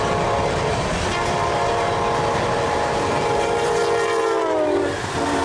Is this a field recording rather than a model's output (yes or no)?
no